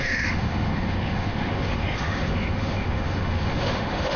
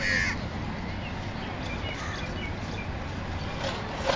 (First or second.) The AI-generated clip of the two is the first